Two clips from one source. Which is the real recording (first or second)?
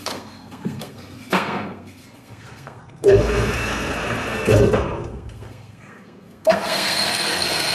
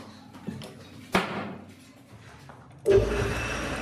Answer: second